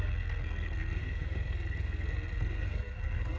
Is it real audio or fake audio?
fake